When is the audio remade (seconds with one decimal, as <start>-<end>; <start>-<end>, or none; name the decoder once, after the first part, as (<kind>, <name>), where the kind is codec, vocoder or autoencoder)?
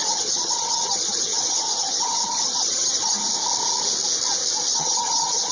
0.0-3.3 (vocoder, HiFi-GAN); 4.7-5.5